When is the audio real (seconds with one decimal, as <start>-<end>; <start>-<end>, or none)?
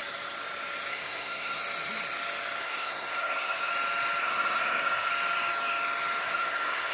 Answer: 0.0-0.9; 1.6-2.6; 3.7-4.2; 5.1-6.2